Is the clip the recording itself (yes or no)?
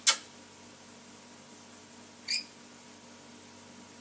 yes